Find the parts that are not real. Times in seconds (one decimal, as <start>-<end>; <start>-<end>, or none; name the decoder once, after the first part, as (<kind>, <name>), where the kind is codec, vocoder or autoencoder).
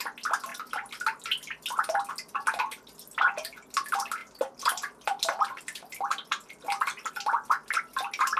4.2-7.1 (vocoder, BigVGAN v2)